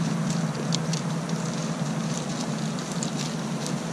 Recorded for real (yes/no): yes